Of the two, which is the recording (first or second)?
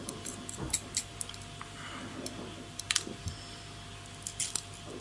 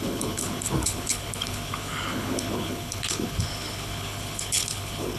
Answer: first